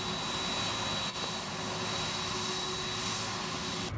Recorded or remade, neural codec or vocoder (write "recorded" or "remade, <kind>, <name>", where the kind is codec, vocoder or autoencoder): recorded